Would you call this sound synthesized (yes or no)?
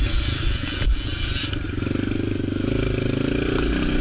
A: no